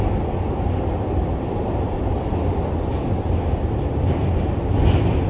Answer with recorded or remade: recorded